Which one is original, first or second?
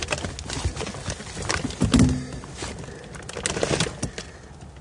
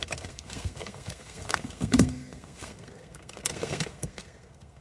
first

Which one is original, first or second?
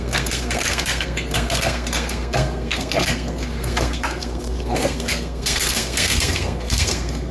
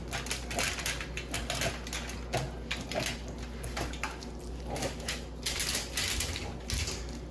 second